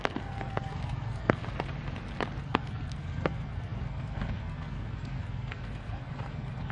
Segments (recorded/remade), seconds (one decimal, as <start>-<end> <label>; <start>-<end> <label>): 0.0-1.4 remade; 1.4-2.4 recorded; 2.4-6.7 remade